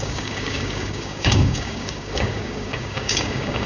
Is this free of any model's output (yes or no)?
no